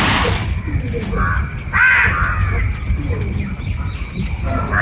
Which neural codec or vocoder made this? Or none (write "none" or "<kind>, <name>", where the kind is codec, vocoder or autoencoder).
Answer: none